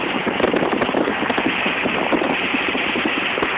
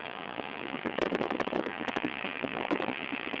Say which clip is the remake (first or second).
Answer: second